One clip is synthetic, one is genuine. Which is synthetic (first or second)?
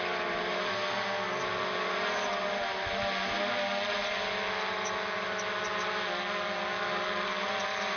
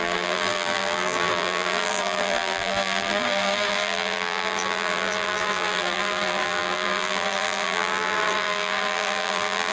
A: second